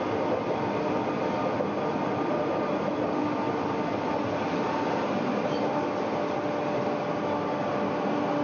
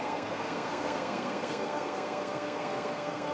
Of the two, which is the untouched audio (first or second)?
first